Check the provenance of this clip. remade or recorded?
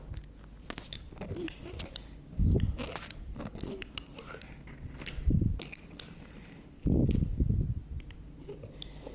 recorded